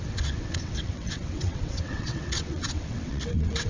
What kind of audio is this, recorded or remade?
remade